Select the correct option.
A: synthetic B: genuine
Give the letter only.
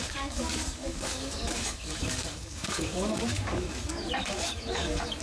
A